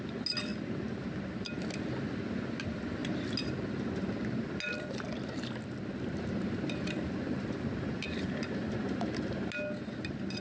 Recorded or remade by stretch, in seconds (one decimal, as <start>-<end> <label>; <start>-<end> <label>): 0.0-10.4 recorded